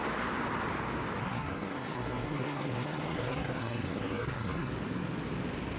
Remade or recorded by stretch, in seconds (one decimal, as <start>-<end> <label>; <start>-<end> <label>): 0.0-1.2 recorded; 1.2-4.7 remade; 4.7-5.8 recorded